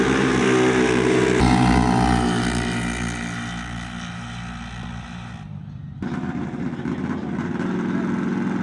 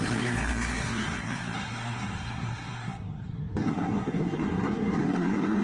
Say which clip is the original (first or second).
first